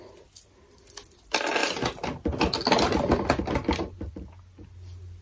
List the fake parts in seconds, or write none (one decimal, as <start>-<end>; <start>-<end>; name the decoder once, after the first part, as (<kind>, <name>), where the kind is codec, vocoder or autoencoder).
none